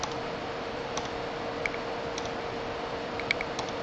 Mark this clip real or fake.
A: real